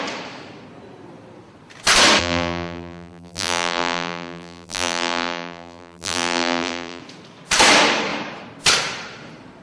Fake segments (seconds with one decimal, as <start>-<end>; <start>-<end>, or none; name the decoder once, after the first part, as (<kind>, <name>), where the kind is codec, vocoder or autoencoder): 2.2-7.0 (vocoder, BigVGAN v2)